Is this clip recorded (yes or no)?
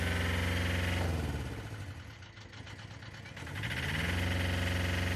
yes